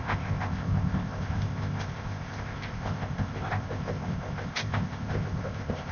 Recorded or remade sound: remade